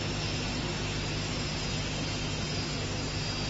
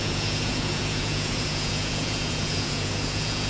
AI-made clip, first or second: second